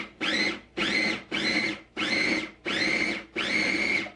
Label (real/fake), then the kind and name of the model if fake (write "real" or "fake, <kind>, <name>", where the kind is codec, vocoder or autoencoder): real